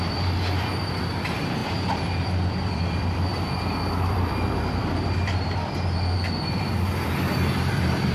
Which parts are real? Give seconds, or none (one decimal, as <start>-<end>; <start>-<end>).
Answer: none